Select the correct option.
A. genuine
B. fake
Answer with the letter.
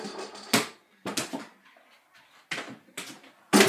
A